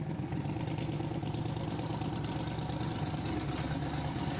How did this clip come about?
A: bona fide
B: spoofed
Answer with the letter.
A